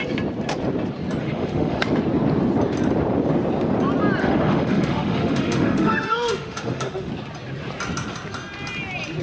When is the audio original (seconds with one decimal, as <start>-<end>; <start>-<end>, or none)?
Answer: 0.0-1.2; 1.8-4.2; 7.1-9.2